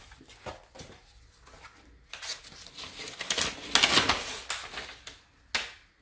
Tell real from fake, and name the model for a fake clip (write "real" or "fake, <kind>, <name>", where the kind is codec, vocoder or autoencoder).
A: real